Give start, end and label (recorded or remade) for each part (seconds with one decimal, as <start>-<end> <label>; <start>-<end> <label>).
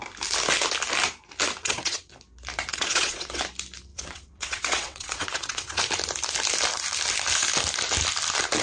0.0-1.6 recorded; 1.6-2.1 remade; 2.1-2.7 recorded; 2.7-3.4 remade; 3.4-3.9 recorded; 3.9-5.8 remade; 5.8-8.6 recorded